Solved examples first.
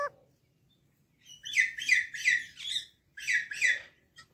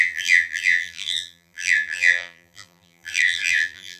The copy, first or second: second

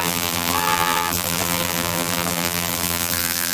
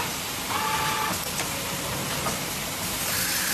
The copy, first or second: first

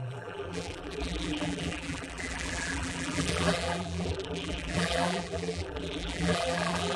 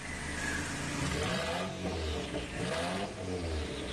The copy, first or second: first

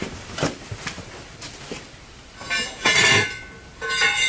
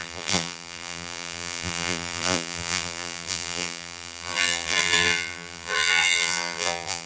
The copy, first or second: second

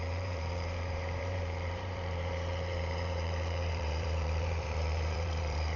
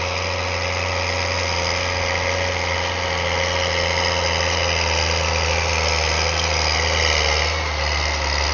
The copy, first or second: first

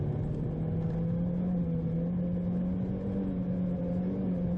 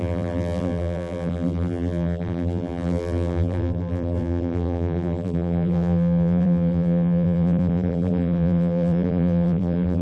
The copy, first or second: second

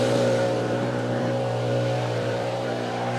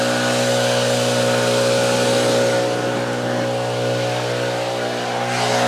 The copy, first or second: first